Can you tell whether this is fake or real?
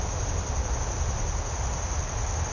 real